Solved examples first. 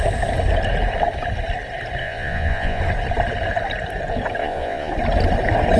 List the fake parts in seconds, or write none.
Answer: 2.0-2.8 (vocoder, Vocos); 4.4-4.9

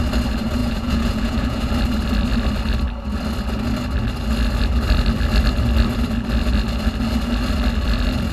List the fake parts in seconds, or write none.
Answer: 0.6-1.6 (vocoder, Vocos)

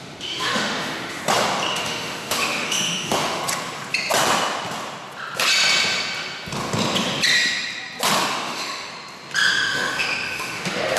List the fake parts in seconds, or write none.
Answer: 0.0-1.2 (autoencoder, DAC-VAE); 1.7-3.4; 8.3-8.9; 9.5-11.0